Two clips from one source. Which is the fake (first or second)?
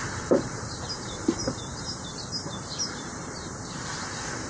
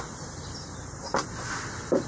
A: first